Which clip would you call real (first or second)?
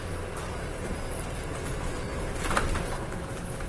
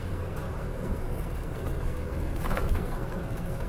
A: first